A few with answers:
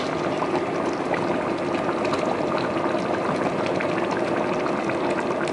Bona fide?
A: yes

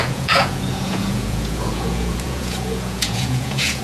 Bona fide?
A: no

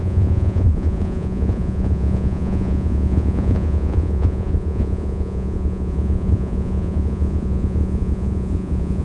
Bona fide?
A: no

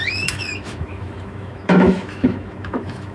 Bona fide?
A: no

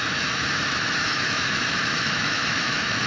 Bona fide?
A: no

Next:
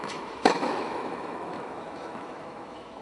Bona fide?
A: no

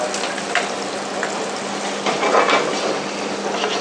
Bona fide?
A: yes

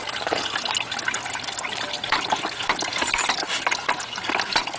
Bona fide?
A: no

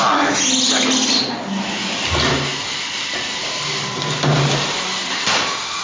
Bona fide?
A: yes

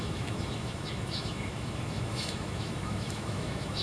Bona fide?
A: no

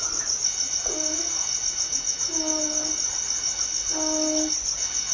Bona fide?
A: yes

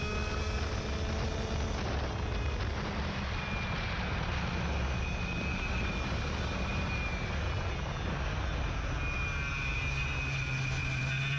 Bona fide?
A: yes